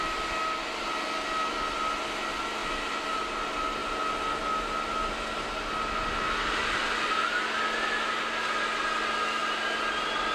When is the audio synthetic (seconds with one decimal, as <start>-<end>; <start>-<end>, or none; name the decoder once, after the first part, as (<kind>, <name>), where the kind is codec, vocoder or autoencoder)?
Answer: 2.6-3.2 (vocoder, BigVGAN v2)